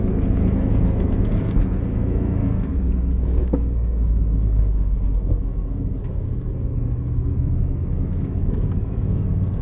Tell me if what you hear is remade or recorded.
remade